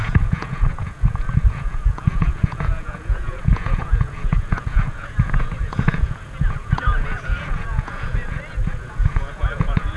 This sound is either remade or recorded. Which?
remade